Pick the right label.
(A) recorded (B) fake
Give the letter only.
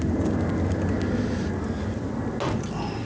A